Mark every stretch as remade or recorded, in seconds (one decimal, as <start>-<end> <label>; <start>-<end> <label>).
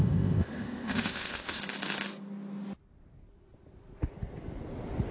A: 0.0-1.6 remade; 1.6-5.1 recorded